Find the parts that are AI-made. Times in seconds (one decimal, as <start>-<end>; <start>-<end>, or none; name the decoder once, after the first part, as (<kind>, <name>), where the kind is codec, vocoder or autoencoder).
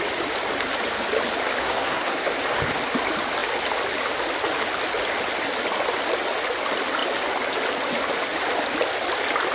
1.6-2.3 (codec, SNAC)